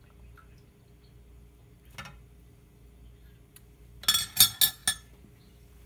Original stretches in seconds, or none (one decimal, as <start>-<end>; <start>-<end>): 0.0-5.9